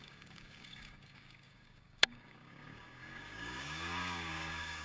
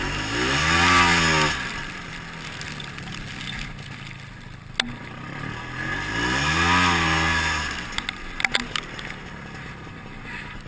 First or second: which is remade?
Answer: first